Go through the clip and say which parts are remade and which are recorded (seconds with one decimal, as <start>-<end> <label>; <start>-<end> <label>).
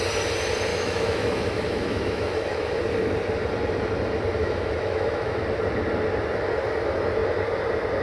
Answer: 0.0-0.7 recorded; 0.7-2.8 remade; 2.8-4.4 recorded; 4.4-5.4 remade; 5.4-8.0 recorded